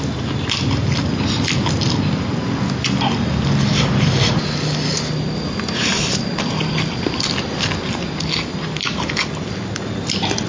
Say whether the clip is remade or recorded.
recorded